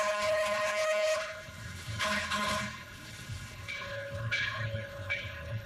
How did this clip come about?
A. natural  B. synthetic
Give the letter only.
B